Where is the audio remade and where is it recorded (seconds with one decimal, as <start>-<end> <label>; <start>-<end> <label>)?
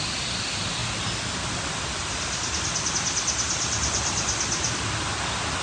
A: 0.0-5.6 recorded